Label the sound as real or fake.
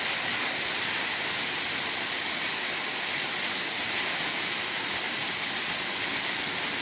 real